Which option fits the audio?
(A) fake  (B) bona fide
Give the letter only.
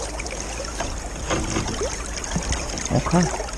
B